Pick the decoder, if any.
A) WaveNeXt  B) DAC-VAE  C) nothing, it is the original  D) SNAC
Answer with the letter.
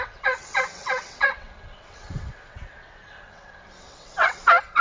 A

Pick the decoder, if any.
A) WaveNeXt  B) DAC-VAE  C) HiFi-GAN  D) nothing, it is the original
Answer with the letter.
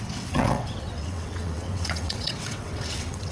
A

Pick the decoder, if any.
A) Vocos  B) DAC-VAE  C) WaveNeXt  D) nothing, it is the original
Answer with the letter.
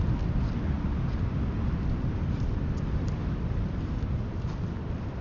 D